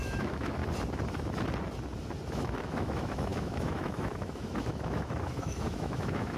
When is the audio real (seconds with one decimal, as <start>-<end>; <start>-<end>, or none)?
0.6-2.3